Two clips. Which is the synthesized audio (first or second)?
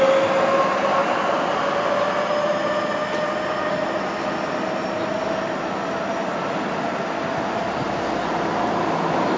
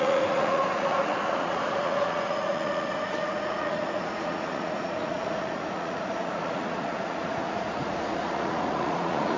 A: second